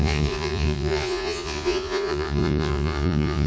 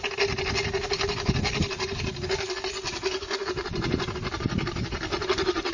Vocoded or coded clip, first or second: first